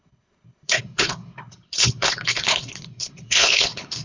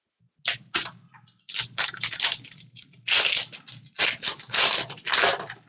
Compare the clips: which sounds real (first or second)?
second